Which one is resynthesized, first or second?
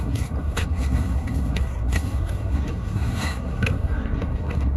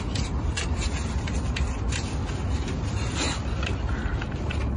first